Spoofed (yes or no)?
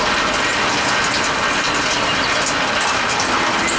no